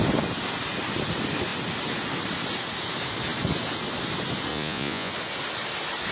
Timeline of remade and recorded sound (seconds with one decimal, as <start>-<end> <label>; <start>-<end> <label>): 0.0-4.5 recorded; 4.5-5.1 remade; 5.1-6.1 recorded